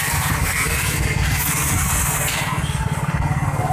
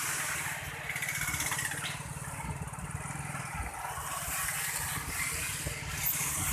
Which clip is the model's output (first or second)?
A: first